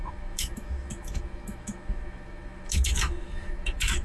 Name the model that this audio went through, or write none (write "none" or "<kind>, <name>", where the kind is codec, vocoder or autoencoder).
autoencoder, DAC-VAE